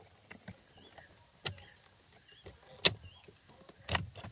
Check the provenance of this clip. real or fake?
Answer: real